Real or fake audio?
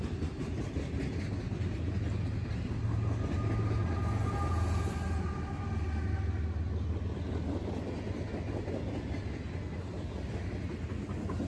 real